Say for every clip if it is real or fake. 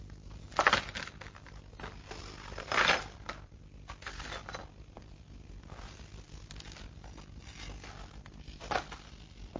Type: real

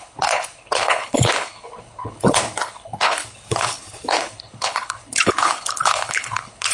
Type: fake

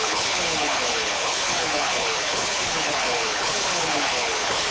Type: fake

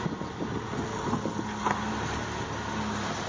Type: real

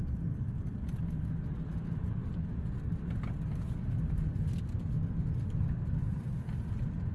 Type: real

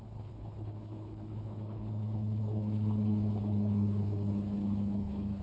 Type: fake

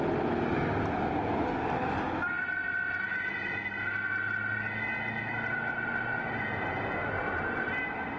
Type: real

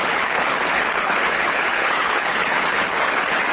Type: fake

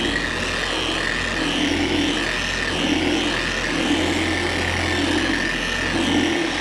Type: real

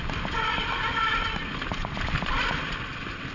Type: real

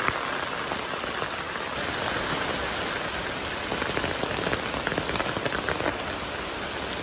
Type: real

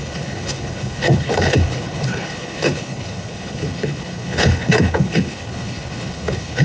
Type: fake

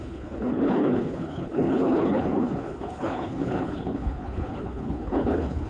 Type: fake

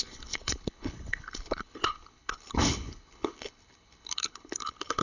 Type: fake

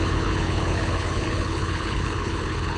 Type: fake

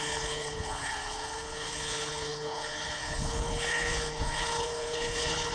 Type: fake